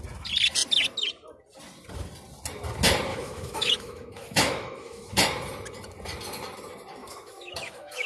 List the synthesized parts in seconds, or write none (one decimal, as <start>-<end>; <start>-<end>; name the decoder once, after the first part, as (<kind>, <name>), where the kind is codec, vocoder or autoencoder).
3.1-5.1 (autoencoder, DAC-VAE); 7.0-8.1